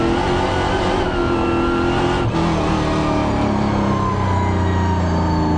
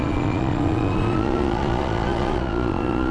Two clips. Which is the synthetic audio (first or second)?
second